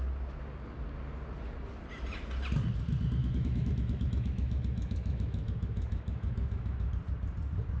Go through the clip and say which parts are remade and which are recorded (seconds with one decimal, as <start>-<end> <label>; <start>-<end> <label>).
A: 0.0-3.2 recorded; 3.2-6.9 remade; 6.9-7.8 recorded